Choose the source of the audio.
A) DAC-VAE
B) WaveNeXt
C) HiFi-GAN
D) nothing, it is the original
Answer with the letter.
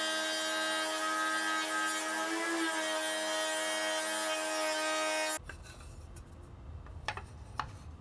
D